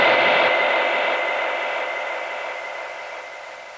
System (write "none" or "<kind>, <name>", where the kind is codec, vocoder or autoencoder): none